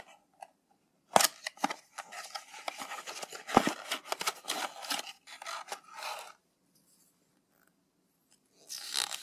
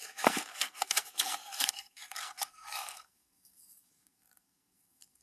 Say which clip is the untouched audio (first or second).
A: first